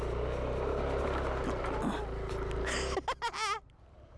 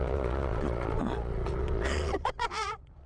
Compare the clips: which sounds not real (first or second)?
second